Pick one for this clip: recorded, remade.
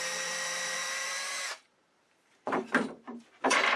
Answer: remade